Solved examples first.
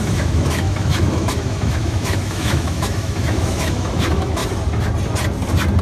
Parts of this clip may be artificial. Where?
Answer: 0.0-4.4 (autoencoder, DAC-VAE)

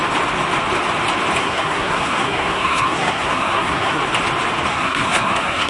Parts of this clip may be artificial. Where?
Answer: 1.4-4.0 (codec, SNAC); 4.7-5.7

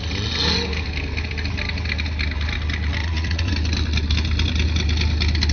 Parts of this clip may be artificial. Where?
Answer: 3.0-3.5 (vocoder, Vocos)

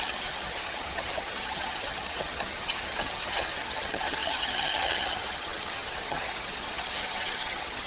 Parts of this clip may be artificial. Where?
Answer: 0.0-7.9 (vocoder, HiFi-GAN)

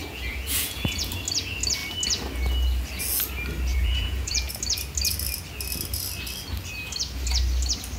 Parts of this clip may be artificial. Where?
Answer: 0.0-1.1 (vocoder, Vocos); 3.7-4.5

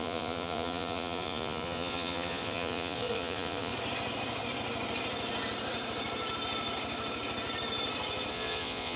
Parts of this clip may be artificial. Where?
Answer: 0.0-3.7 (vocoder, Vocos); 8.3-9.0

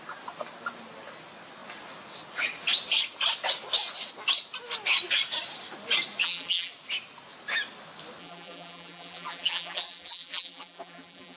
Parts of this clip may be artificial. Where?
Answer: 6.2-6.7 (vocoder, BigVGAN v2); 8.2-11.4